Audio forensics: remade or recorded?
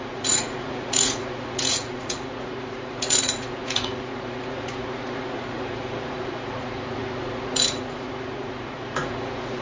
remade